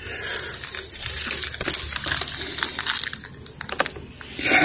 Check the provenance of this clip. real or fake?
real